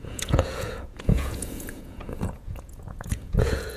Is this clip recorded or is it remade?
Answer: remade